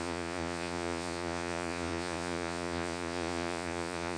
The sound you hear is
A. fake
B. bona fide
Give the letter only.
A